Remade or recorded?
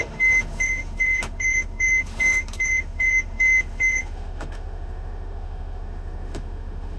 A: remade